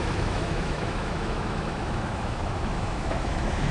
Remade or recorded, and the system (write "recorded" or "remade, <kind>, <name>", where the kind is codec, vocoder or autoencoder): remade, autoencoder, DAC-VAE